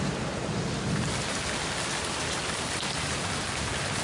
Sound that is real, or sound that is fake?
real